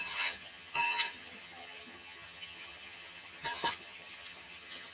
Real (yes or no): no